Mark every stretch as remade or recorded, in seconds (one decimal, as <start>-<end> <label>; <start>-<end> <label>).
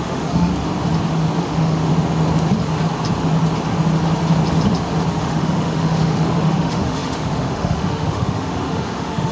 0.0-0.5 remade; 0.5-1.4 recorded; 1.4-1.9 remade; 1.9-5.1 recorded; 5.1-9.3 remade